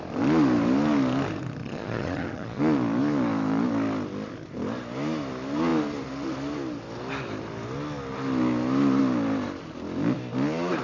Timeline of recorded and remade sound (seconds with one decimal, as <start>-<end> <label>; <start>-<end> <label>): 0.0-1.6 recorded; 1.6-2.6 remade; 2.6-10.8 recorded